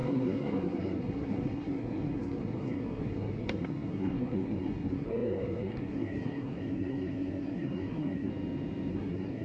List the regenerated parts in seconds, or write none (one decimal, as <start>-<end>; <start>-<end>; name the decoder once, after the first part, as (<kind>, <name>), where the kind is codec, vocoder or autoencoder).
0.0-8.3 (codec, SNAC); 8.9-9.4

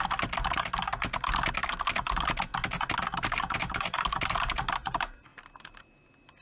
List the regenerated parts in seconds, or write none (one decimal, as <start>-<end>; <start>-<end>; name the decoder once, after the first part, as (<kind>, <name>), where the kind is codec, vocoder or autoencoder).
none

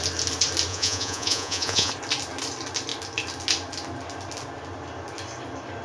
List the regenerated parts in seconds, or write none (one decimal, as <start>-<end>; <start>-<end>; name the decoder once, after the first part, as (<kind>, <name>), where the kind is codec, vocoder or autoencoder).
0.7-1.9 (vocoder, Vocos)